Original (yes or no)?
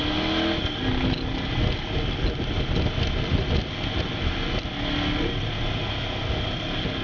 yes